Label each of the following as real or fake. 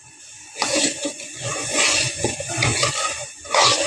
fake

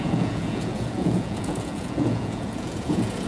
fake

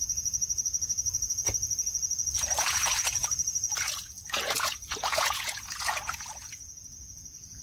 fake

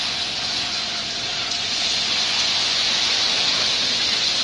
fake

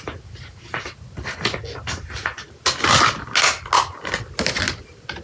real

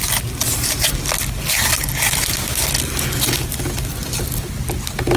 real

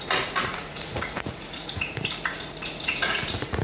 fake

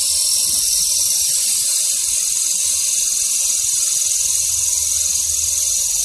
real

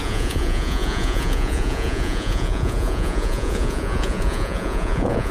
fake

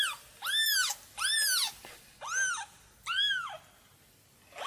real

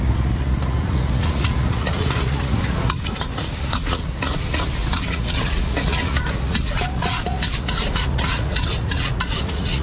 fake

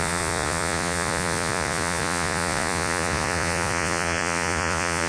fake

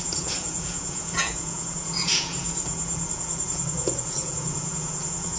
fake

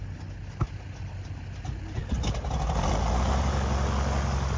real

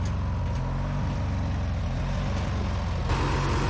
real